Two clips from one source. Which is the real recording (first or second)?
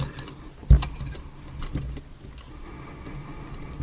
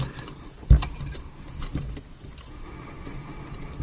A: first